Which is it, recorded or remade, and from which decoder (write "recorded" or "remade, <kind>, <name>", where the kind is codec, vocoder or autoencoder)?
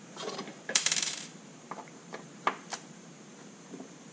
remade, vocoder, BigVGAN v2